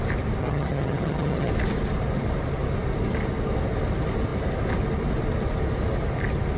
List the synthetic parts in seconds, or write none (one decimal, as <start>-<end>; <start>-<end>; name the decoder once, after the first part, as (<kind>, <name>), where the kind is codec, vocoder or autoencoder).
0.4-1.5 (vocoder, HiFi-GAN)